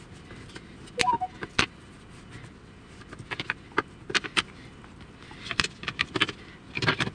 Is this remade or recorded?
recorded